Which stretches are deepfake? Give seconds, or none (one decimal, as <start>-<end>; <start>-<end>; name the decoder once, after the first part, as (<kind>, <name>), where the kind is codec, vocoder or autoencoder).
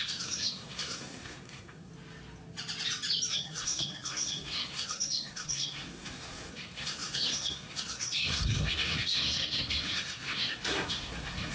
0.0-1.9 (codec, SNAC); 3.3-11.5